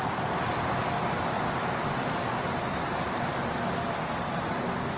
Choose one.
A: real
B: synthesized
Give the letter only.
A